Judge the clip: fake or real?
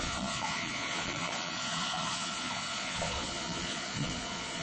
fake